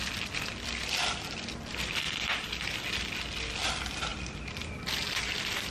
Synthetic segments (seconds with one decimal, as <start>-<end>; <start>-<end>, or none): 4.1-4.8